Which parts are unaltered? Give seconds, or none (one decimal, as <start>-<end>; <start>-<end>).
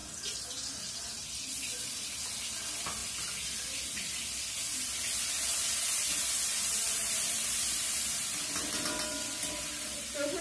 0.9-7.0; 8.4-10.4